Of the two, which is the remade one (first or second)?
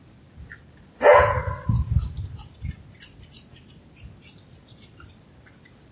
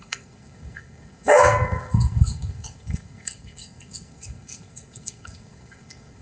second